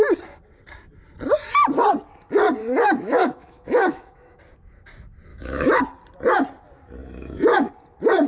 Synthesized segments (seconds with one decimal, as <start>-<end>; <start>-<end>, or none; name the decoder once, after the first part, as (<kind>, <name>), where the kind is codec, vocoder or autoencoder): 2.6-4.4 (autoencoder, DAC-VAE); 5.3-5.8; 7.0-7.7